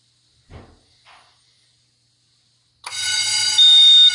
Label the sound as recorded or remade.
recorded